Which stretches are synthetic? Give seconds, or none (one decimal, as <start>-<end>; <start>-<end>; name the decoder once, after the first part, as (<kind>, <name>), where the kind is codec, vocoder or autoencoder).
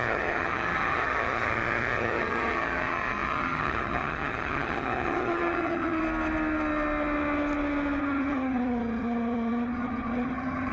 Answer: 0.0-6.0 (vocoder, HiFi-GAN); 8.0-10.7